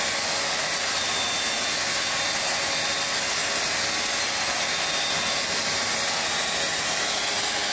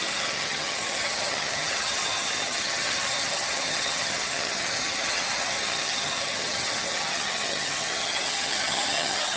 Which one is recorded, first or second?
first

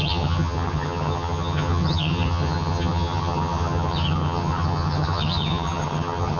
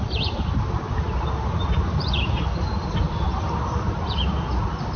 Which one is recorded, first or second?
second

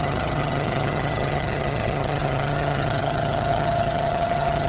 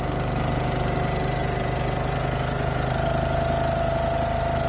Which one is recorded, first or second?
second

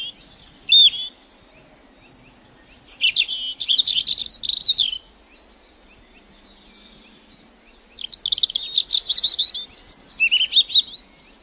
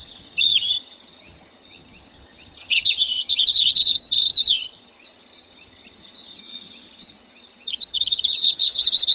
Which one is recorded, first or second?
first